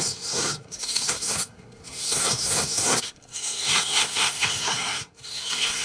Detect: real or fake fake